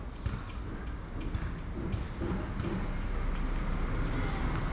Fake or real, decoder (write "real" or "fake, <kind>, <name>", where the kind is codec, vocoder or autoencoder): real